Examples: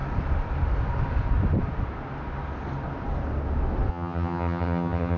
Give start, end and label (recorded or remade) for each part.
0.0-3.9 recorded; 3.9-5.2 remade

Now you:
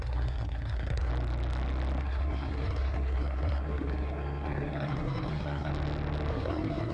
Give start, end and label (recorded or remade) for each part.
0.0-1.1 remade; 1.1-2.0 recorded; 2.0-5.7 remade; 5.7-6.3 recorded; 6.3-6.9 remade

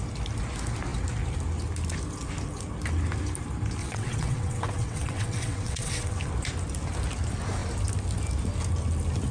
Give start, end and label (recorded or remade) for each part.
0.0-3.8 recorded; 3.8-6.2 remade; 6.2-9.3 recorded

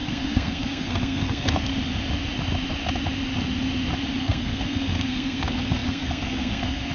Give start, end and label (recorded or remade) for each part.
0.0-1.7 remade; 1.7-4.2 recorded; 4.2-6.9 remade

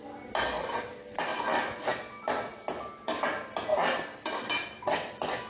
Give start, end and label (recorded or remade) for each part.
0.0-5.5 recorded

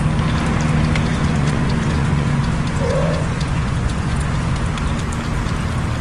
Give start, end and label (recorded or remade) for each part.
0.0-1.1 recorded; 1.1-4.7 remade; 4.7-6.0 recorded